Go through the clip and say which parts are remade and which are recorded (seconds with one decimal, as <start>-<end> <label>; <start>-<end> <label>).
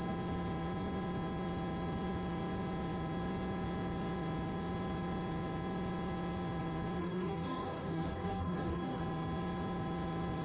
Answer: 0.0-7.0 recorded; 7.0-9.0 remade; 9.0-10.4 recorded